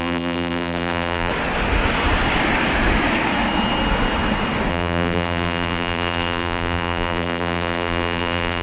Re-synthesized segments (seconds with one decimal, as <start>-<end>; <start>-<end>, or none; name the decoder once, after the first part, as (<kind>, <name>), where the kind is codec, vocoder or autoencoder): 0.0-1.3 (vocoder, BigVGAN v2); 4.7-8.6